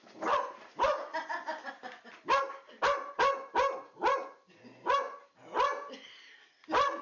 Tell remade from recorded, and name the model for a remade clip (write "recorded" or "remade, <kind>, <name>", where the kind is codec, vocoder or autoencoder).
recorded